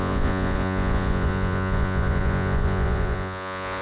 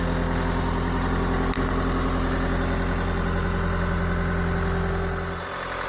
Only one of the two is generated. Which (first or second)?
first